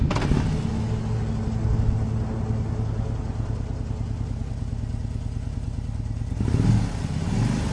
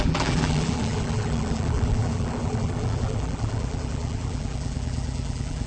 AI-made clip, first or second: second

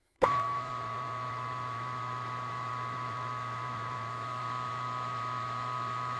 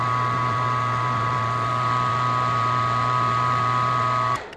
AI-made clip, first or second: first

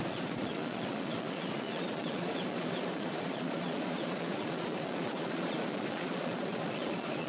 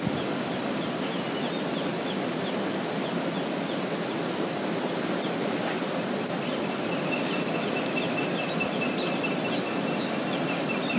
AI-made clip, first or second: first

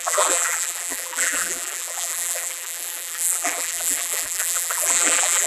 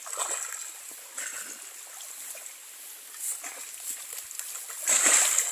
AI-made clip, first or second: first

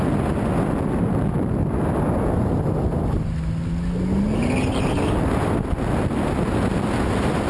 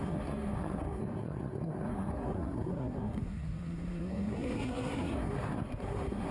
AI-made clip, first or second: second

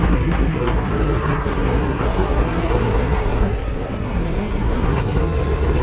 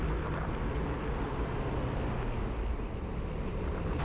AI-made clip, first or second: first